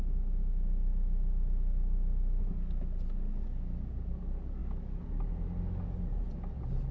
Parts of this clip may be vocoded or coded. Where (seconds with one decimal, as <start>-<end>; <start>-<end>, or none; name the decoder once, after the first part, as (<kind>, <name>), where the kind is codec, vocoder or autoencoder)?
none